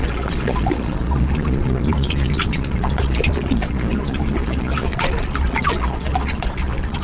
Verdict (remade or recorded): remade